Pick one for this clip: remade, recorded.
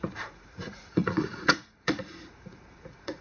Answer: remade